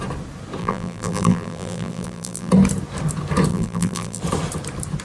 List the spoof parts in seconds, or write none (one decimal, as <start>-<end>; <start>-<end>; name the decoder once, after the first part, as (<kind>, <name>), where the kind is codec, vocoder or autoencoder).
0.6-2.5 (vocoder, BigVGAN v2); 3.5-4.2